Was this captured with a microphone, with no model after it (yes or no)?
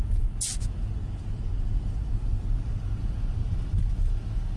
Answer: yes